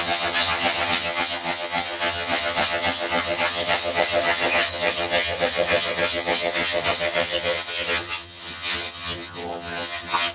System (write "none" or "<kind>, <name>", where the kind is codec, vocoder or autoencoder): vocoder, HiFi-GAN